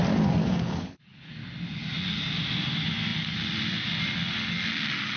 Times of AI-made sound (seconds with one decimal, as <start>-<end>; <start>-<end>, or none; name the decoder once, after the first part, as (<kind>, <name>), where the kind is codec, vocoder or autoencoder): 0.4-1.3 (codec, HILCodec)